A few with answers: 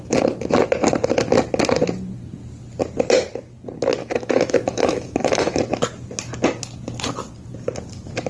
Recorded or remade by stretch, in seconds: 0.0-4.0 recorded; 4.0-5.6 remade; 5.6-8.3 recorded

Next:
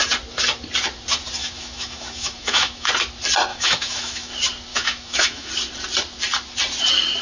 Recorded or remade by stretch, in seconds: 0.0-1.4 recorded; 1.4-2.9 remade; 2.9-3.5 recorded; 3.5-4.3 remade; 4.3-4.7 recorded; 4.7-5.5 remade; 5.5-7.2 recorded

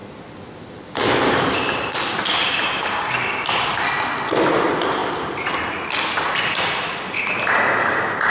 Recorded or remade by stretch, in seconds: 0.0-8.3 recorded

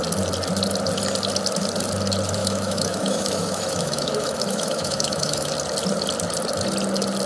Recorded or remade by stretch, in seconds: 0.0-2.4 recorded; 2.4-5.5 remade; 5.5-7.3 recorded

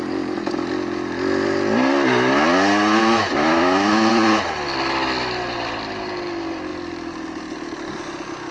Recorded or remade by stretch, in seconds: 0.0-3.0 recorded; 3.0-4.1 remade; 4.1-8.5 recorded

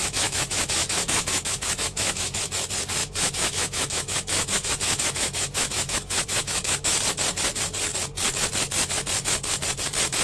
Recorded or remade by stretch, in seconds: 0.0-2.4 remade; 2.4-3.0 recorded; 3.0-7.0 remade; 7.0-10.2 recorded